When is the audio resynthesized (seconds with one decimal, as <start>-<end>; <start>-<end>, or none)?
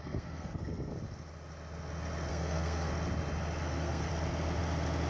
0.0-0.9; 2.3-2.9; 3.6-4.1